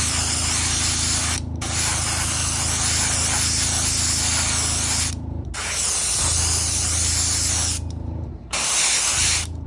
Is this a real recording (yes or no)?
yes